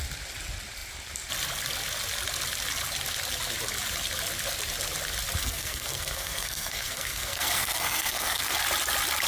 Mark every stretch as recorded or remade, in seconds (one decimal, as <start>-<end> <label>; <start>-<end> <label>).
0.0-5.4 recorded; 5.4-8.6 remade; 8.6-9.3 recorded